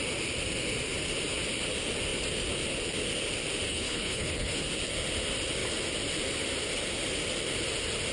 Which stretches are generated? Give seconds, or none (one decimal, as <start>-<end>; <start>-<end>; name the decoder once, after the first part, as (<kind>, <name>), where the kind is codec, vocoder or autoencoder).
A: 3.7-4.6 (codec, HILCodec)